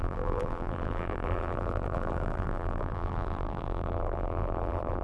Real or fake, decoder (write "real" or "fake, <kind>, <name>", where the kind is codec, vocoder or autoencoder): fake, vocoder, BigVGAN v2